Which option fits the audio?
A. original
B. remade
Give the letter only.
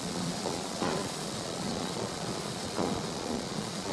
B